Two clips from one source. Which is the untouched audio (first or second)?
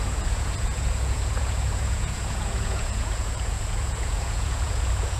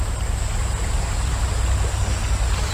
second